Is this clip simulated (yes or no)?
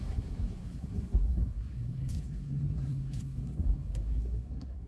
yes